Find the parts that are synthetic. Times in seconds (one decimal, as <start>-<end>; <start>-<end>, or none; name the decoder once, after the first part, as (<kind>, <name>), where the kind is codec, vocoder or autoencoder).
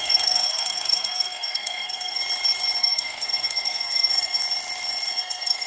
0.0-2.2 (codec, SNAC); 2.8-4.4; 5.1-5.7